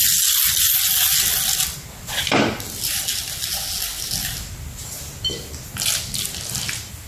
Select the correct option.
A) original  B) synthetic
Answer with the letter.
A